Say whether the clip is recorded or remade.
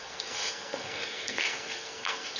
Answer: remade